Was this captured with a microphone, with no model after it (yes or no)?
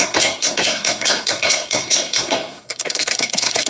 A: no